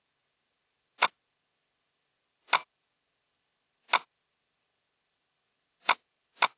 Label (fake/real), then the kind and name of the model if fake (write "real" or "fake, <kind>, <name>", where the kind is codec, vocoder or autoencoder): real